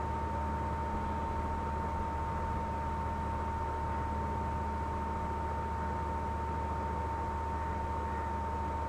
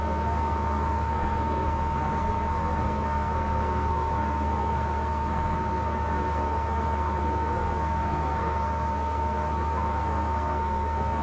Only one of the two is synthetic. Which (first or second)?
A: second